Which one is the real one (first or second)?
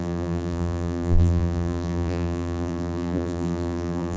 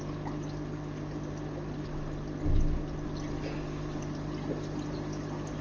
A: second